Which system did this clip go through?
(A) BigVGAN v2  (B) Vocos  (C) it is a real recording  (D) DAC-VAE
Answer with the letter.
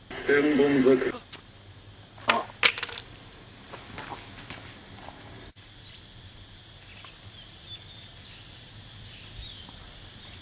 C